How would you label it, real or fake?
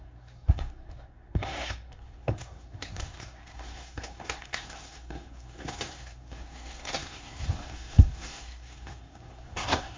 fake